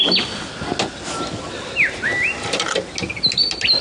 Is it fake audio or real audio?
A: real